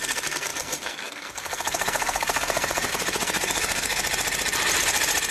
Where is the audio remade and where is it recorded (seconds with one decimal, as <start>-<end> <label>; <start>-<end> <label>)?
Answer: 0.0-4.0 remade; 4.0-5.3 recorded

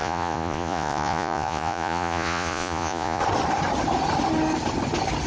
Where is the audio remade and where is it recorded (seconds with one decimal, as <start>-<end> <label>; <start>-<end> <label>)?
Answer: 0.0-3.2 remade; 3.2-5.3 recorded

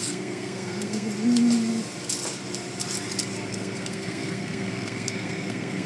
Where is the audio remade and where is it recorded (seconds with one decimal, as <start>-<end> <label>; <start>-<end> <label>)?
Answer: 0.0-1.1 remade; 1.1-3.5 recorded; 3.5-5.9 remade

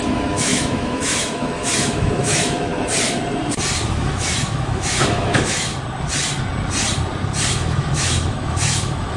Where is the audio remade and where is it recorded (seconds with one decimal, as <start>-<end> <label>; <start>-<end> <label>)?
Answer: 0.0-2.7 remade; 2.7-3.9 recorded; 3.9-5.7 remade; 5.7-7.5 recorded; 7.5-9.2 remade

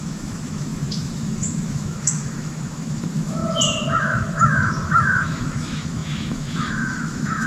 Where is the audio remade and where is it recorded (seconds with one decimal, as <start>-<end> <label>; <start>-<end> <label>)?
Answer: 0.0-3.4 remade; 3.4-4.0 recorded; 4.0-7.5 remade

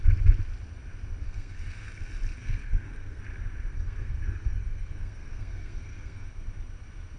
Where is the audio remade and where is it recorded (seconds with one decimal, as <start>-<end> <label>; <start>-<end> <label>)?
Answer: 0.0-1.2 recorded; 1.2-1.9 remade; 1.9-2.3 recorded; 2.3-3.2 remade; 3.2-3.7 recorded; 3.7-6.3 remade; 6.3-7.2 recorded

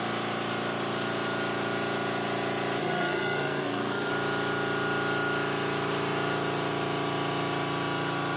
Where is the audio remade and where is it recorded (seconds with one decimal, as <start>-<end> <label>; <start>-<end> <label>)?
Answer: 0.0-2.8 recorded; 2.8-4.1 remade; 4.1-8.4 recorded